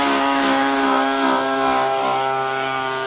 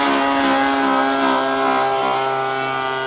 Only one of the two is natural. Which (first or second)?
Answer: second